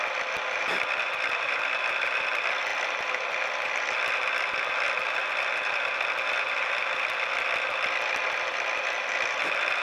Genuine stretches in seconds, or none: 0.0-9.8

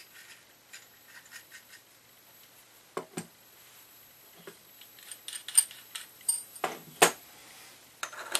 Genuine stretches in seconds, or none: 0.0-8.4

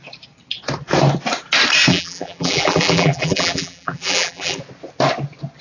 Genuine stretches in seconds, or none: 0.0-1.9; 4.6-5.6

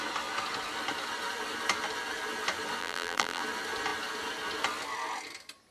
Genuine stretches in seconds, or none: 0.0-2.8; 3.4-5.7

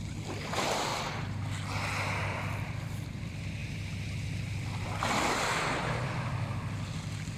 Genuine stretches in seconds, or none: 0.9-2.2; 3.6-5.2